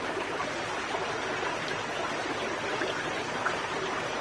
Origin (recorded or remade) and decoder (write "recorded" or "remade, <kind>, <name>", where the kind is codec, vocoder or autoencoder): recorded